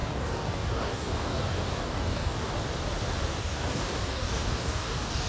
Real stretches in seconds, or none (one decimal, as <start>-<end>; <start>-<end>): 2.5-3.4